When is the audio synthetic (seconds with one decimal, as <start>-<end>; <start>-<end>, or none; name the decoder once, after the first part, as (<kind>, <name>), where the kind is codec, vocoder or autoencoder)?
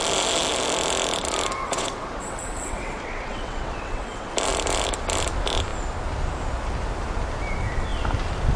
1.6-4.3 (vocoder, WaveNeXt)